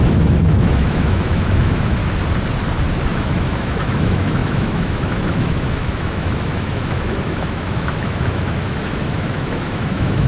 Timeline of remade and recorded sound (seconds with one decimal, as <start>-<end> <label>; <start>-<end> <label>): 0.0-2.0 remade; 2.0-3.1 recorded; 3.1-10.3 remade